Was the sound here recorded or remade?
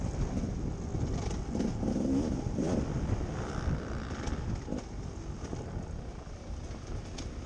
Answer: recorded